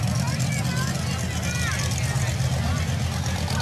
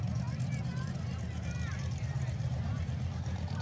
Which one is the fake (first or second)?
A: second